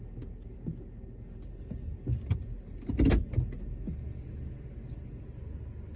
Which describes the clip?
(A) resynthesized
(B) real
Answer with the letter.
B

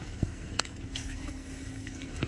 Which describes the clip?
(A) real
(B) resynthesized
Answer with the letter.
B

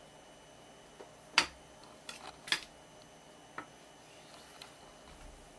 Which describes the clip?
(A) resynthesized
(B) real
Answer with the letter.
B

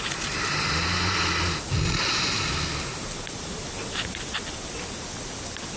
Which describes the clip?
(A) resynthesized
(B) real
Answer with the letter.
B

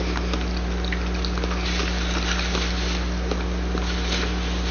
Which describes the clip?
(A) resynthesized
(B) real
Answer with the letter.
B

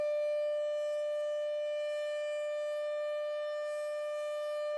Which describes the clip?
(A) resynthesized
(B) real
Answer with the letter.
B